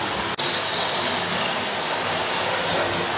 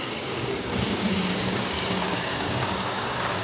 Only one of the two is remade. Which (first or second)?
second